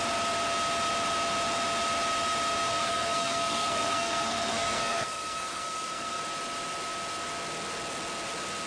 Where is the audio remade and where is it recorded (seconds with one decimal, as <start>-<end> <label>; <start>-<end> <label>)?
0.0-2.7 recorded; 2.7-6.2 remade; 6.2-8.7 recorded